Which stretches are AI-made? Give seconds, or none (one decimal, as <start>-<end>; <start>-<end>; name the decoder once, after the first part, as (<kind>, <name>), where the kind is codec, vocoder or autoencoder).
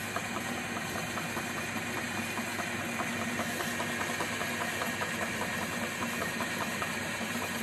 0.0-2.5 (vocoder, BigVGAN v2); 6.2-7.6